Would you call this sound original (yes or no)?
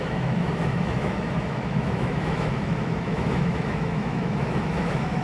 no